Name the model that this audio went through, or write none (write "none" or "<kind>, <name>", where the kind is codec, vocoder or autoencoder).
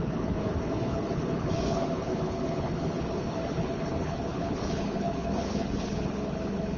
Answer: codec, HILCodec